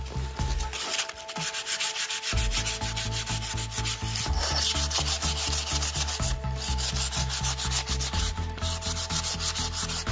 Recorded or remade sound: recorded